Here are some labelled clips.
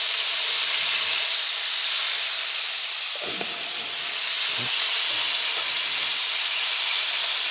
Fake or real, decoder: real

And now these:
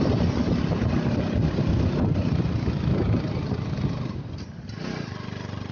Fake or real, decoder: real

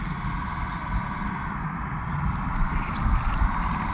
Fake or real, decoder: real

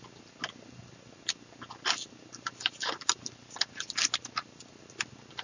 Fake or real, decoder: real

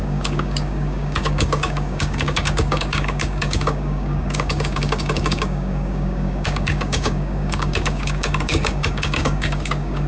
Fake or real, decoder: fake, codec, DAC